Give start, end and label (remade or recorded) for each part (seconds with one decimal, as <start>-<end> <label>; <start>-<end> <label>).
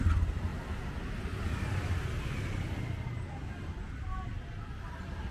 0.0-5.3 recorded